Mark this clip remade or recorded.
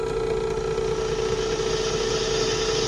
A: recorded